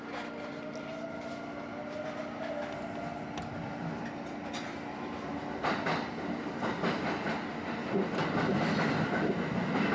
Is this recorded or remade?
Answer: recorded